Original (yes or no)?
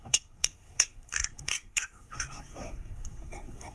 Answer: no